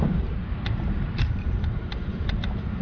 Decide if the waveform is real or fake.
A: fake